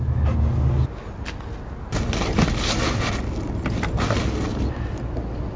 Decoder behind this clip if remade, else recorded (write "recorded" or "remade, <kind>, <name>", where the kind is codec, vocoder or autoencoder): recorded